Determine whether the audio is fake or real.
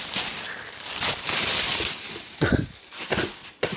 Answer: fake